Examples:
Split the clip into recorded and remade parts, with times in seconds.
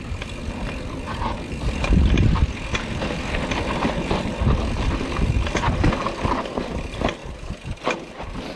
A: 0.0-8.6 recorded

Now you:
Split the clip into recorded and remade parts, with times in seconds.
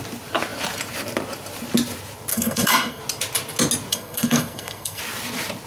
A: 0.0-2.3 recorded; 2.3-3.0 remade; 3.0-3.9 recorded; 3.9-5.0 remade; 5.0-5.7 recorded